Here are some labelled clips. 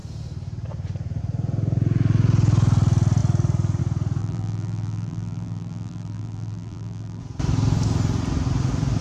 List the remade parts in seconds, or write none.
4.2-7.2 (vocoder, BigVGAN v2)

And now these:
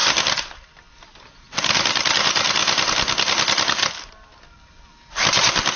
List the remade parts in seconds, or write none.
none